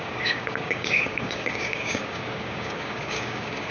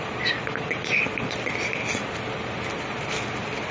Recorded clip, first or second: second